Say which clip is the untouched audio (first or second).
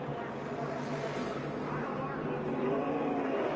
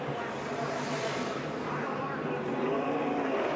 first